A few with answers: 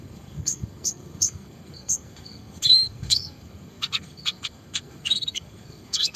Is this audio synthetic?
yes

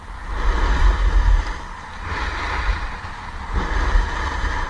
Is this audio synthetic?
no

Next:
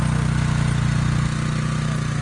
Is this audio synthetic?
no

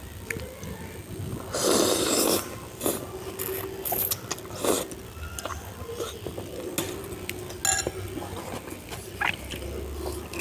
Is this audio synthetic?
no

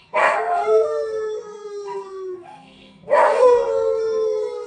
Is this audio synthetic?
yes